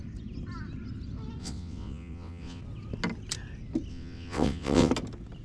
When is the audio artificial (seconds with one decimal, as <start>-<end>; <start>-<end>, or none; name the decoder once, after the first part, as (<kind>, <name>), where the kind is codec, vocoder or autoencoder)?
1.4-2.6 (vocoder, WaveNeXt); 3.9-4.9